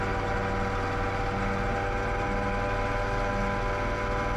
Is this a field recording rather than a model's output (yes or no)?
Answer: yes